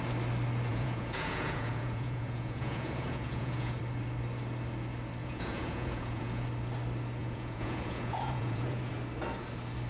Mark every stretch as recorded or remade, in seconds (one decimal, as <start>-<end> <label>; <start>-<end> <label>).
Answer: 0.0-0.7 recorded; 0.7-3.8 remade; 3.8-5.2 recorded; 5.2-6.4 remade; 6.4-7.2 recorded; 7.2-8.9 remade; 8.9-9.9 recorded